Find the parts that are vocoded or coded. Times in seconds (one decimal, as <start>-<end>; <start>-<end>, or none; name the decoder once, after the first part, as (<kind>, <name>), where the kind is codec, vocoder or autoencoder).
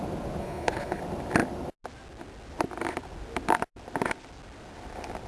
0.4-1.0 (codec, HILCodec)